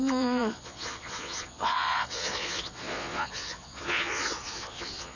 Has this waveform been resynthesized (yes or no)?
yes